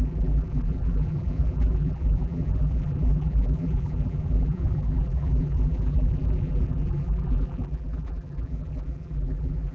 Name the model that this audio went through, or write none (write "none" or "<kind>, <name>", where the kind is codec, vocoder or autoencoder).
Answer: vocoder, BigVGAN v2